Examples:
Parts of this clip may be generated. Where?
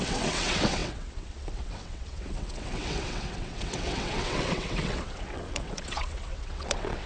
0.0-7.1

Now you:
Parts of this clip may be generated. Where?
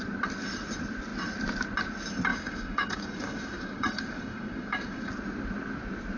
2.3-5.1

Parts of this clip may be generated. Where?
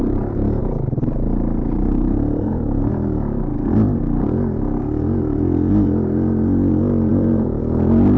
0.6-2.8; 7.1-7.6